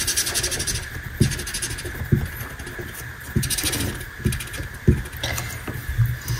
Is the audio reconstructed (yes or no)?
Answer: no